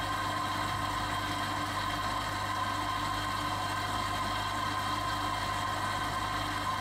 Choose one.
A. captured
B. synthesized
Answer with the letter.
A